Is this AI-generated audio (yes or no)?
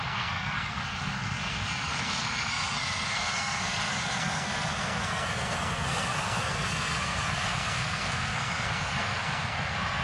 yes